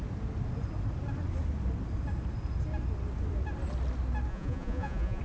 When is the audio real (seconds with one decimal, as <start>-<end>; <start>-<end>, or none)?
0.0-4.3